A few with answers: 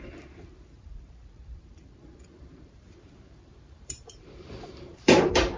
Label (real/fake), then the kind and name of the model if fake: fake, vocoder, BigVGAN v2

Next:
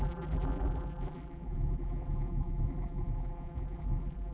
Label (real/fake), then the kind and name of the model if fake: fake, vocoder, BigVGAN v2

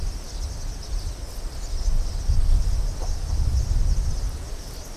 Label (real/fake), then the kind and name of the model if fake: real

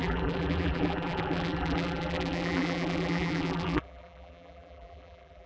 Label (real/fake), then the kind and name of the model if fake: fake, vocoder, BigVGAN v2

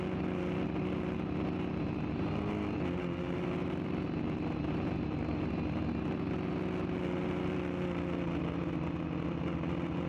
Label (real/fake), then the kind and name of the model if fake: real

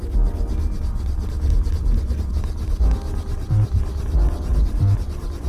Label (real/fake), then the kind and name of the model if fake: real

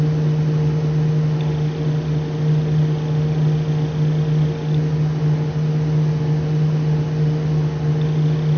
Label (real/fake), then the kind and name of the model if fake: real